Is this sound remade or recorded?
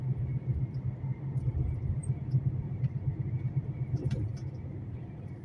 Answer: remade